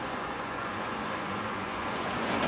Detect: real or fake fake